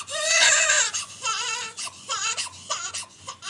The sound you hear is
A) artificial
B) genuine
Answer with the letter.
A